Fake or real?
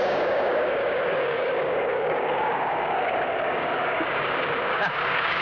fake